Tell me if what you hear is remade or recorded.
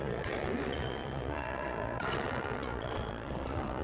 remade